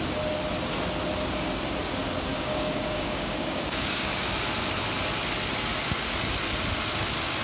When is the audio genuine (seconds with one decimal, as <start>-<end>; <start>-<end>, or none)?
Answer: 0.0-2.3; 4.3-7.4